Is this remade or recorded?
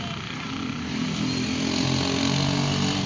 recorded